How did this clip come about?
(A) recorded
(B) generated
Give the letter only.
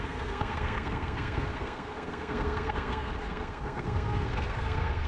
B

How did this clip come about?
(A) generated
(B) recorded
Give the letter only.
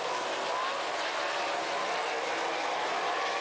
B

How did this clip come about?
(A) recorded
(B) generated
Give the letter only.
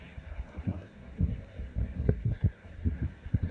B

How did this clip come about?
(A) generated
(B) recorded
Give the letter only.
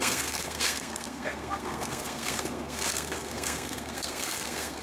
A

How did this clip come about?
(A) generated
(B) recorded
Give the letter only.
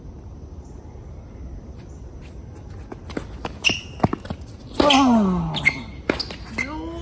B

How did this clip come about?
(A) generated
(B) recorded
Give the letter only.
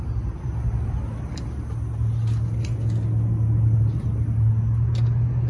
B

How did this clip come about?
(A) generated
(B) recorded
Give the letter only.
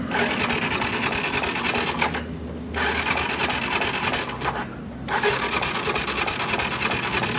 B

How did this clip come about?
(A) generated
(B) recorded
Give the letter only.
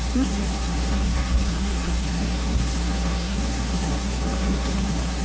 A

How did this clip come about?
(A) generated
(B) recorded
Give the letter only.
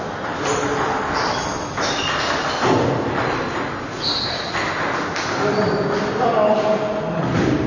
B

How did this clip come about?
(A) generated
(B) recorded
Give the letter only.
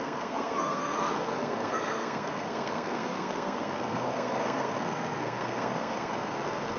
A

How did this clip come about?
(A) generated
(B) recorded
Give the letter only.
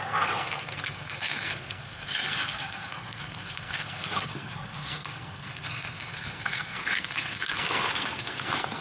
A